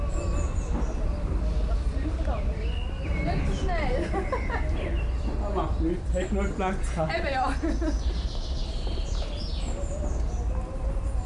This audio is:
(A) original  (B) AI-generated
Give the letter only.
A